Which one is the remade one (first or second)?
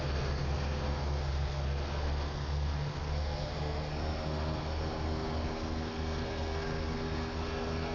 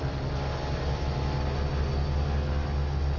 first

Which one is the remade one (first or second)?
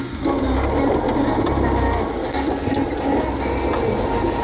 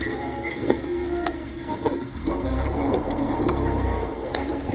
second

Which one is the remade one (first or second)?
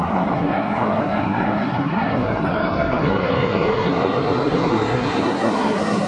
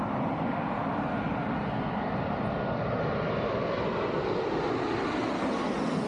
first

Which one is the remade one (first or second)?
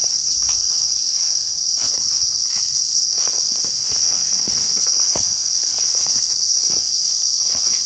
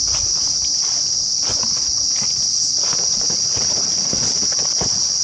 first